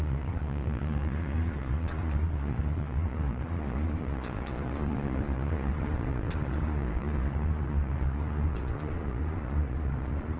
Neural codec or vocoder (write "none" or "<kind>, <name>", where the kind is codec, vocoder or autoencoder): vocoder, Vocos